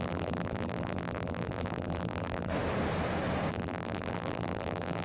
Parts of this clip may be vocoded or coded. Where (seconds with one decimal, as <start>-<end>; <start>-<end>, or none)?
0.0-2.5; 3.5-5.0